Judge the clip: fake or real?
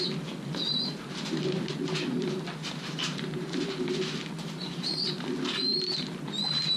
real